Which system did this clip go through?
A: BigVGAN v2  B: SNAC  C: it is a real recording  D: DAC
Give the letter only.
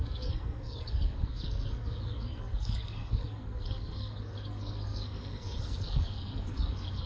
B